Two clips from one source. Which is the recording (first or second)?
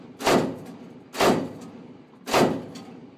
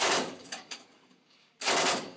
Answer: first